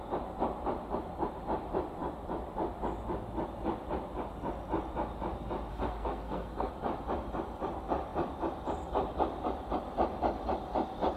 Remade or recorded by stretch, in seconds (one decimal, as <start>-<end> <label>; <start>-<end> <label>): 0.0-5.7 recorded; 5.7-6.7 remade; 6.7-11.2 recorded

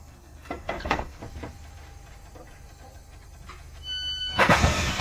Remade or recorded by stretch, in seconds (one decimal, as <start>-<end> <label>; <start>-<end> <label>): 0.0-1.2 remade; 1.2-4.2 recorded; 4.2-5.0 remade

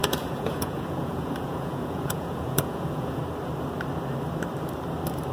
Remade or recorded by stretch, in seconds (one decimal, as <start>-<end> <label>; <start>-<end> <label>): 0.0-3.2 remade; 3.2-5.3 recorded

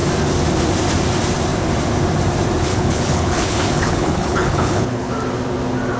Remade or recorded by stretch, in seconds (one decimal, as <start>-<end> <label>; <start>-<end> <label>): 0.0-2.7 recorded; 2.7-5.1 remade; 5.1-6.0 recorded

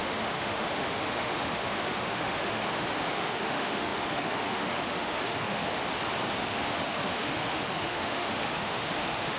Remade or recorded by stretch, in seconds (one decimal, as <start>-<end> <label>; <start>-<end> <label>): 0.0-2.6 remade; 2.6-3.1 recorded; 3.1-5.8 remade; 5.8-6.5 recorded; 6.5-9.4 remade

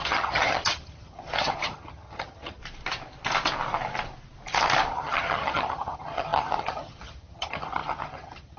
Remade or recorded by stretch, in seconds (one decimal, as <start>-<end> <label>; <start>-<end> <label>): 0.0-2.6 remade; 2.6-4.9 recorded; 4.9-8.6 remade